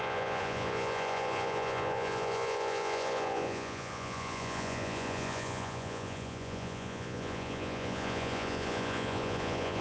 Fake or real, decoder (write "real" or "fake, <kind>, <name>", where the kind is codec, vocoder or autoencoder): fake, vocoder, Vocos